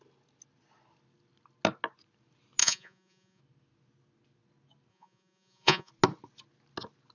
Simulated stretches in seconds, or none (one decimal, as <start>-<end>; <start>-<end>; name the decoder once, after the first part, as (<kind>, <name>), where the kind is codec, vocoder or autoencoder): 2.6-3.4 (vocoder, Vocos); 4.9-5.9